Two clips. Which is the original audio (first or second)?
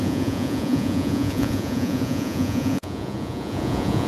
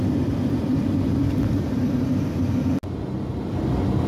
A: second